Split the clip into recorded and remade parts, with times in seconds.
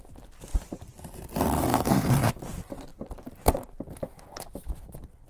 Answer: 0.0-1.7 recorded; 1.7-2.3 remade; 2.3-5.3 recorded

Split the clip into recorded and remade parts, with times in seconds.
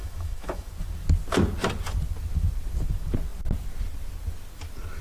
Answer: 0.0-0.7 remade; 0.7-5.0 recorded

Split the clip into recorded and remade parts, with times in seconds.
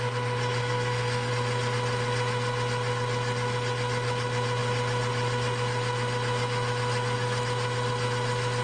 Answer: 0.0-0.6 recorded; 0.6-1.3 remade; 1.3-8.6 recorded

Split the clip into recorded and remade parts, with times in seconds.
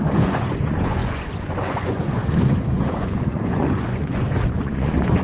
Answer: 0.0-5.2 remade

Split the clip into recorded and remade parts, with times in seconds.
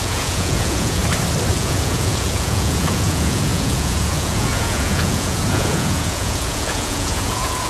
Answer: 0.0-1.0 remade; 1.0-1.5 recorded; 1.5-7.7 remade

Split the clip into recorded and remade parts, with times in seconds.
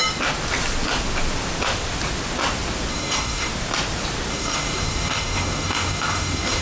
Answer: 0.0-2.9 recorded; 2.9-3.5 remade; 3.5-4.3 recorded; 4.3-6.6 remade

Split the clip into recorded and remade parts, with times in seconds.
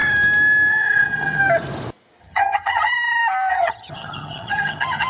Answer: 0.0-0.7 recorded; 0.7-1.4 remade; 1.4-2.2 recorded; 2.2-2.9 remade; 2.9-3.5 recorded; 3.5-5.1 remade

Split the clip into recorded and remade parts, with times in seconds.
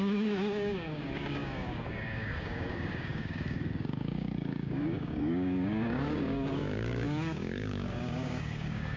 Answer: 0.0-9.0 remade